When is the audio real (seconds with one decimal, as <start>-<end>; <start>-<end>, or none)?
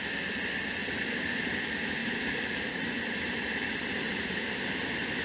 0.0-0.8; 1.5-2.0